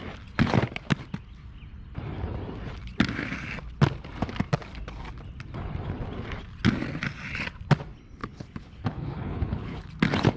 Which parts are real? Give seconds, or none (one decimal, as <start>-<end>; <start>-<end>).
0.0-8.2; 9.9-10.4